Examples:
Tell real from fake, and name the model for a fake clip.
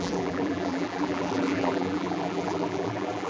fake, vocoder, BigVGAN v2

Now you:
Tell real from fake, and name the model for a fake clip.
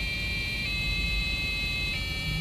fake, vocoder, BigVGAN v2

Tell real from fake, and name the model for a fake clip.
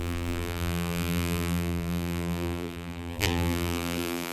fake, vocoder, BigVGAN v2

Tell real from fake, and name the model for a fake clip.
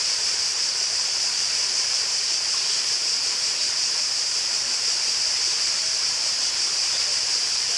fake, vocoder, BigVGAN v2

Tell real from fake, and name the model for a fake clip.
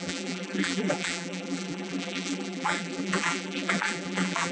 fake, vocoder, BigVGAN v2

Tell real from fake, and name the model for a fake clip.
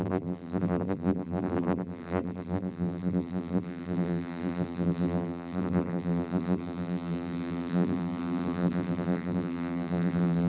fake, vocoder, BigVGAN v2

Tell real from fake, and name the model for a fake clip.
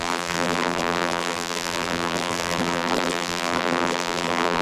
fake, vocoder, BigVGAN v2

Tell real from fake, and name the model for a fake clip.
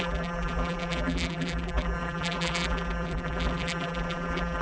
fake, vocoder, BigVGAN v2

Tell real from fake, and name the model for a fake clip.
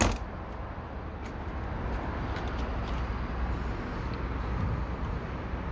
real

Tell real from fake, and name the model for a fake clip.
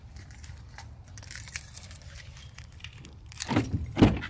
fake, vocoder, BigVGAN v2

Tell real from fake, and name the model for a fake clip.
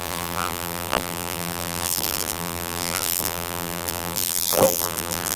fake, vocoder, BigVGAN v2